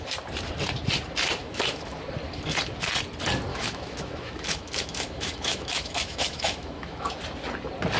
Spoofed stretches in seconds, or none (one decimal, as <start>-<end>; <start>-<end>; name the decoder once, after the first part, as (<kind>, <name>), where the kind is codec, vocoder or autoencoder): 1.4-2.0 (autoencoder, DAC-VAE); 3.5-7.2